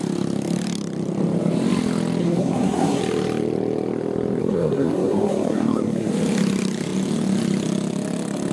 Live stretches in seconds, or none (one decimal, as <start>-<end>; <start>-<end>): 0.0-2.2; 3.0-4.4; 6.1-8.5